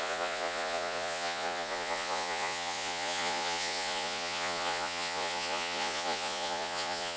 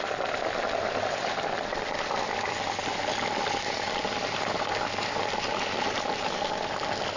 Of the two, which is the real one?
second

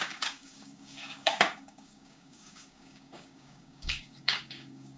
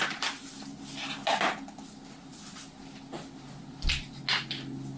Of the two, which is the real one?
second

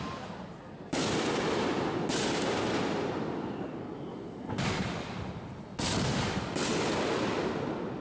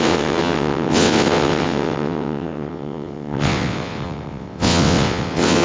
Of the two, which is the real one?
first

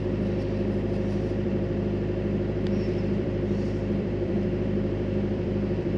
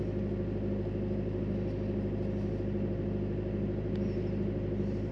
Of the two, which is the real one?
second